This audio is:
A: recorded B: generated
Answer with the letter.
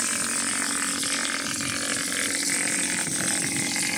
A